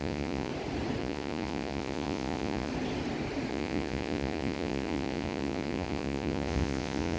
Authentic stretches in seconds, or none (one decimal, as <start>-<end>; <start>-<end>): 0.5-1.0; 2.7-3.5